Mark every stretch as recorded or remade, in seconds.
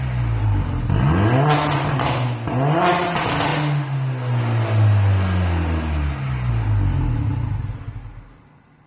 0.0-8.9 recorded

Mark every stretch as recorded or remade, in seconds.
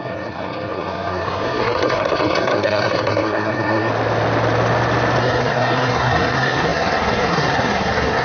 0.0-3.9 remade; 3.9-5.2 recorded; 5.2-8.2 remade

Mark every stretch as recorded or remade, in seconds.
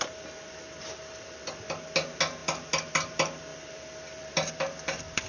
0.0-5.3 recorded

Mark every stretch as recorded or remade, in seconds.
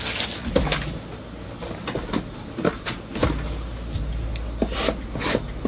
0.0-5.7 recorded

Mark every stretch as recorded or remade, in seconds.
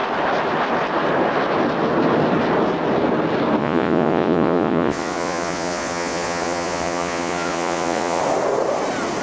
0.0-3.6 recorded; 3.6-8.2 remade; 8.2-9.2 recorded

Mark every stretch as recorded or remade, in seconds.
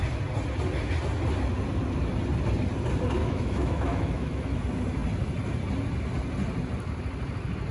0.0-3.2 recorded; 3.2-4.6 remade; 4.6-7.7 recorded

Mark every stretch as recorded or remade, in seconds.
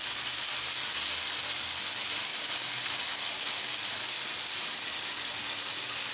0.0-6.1 recorded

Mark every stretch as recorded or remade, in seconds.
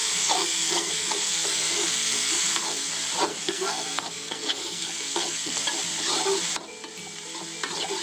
0.0-2.9 remade; 2.9-3.3 recorded; 3.3-5.6 remade; 5.6-8.0 recorded